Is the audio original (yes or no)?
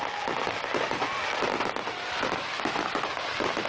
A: yes